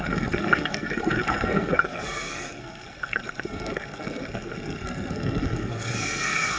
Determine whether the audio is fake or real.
fake